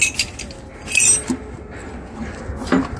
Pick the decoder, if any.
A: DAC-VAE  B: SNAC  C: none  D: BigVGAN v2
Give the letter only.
C